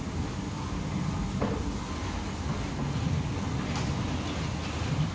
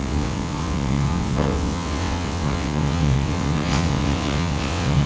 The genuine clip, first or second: first